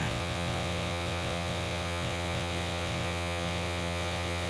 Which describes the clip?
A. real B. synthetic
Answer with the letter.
B